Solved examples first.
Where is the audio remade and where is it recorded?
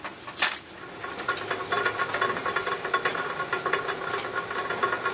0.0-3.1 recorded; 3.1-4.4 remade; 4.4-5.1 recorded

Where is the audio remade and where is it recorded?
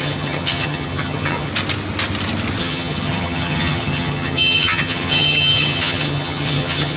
0.0-1.5 remade; 1.5-2.6 recorded; 2.6-7.0 remade